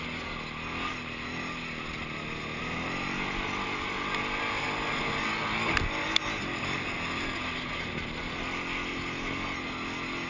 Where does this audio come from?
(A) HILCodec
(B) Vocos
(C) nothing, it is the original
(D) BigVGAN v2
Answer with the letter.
C